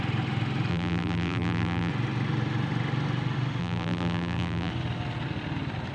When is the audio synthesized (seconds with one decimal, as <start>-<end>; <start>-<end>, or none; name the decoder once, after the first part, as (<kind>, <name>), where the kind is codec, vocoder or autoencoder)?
0.7-1.9 (vocoder, BigVGAN v2); 3.6-4.7

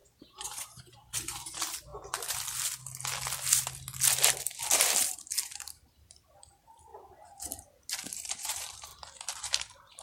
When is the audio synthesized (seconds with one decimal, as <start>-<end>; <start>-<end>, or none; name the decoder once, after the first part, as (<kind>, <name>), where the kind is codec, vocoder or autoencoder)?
0.0-1.9 (vocoder, BigVGAN v2); 5.1-6.9; 8.3-8.9; 9.4-10.0

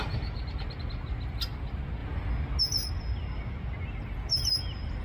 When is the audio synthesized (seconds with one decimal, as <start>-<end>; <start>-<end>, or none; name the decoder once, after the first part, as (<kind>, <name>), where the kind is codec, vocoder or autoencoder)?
none

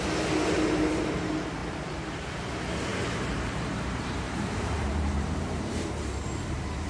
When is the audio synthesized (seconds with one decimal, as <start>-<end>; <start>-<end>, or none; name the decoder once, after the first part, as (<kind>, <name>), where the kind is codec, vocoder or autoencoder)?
1.6-2.5 (vocoder, BigVGAN v2); 2.9-5.9

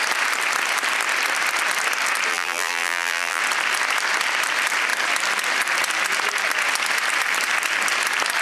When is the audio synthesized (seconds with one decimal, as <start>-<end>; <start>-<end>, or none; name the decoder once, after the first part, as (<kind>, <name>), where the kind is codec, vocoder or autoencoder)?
2.3-3.4 (vocoder, BigVGAN v2)

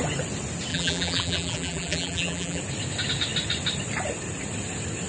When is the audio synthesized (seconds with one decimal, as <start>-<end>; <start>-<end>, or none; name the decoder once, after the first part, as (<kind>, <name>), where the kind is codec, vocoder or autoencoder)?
0.7-2.6 (vocoder, BigVGAN v2)